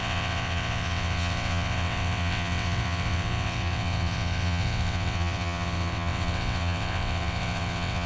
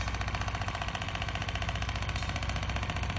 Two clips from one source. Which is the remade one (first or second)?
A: first